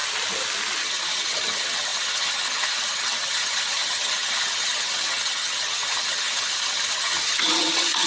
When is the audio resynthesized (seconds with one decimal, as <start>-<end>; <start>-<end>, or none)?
0.8-8.1